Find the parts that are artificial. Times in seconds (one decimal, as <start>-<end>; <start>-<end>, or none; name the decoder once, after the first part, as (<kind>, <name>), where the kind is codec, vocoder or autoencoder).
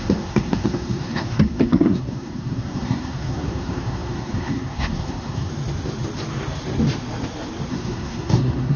0.0-5.5 (codec, SNAC); 7.7-8.8